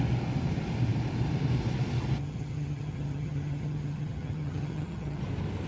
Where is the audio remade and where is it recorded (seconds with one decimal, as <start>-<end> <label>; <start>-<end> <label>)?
0.0-2.2 recorded; 2.2-5.2 remade; 5.2-5.7 recorded